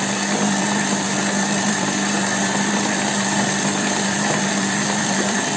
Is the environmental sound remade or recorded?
remade